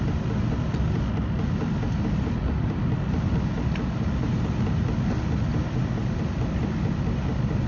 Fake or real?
real